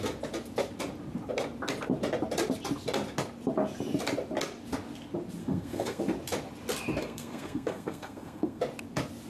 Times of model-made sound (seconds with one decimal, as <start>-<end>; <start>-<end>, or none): 5.4-6.0; 7.0-8.6